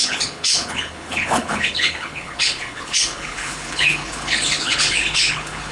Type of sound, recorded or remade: remade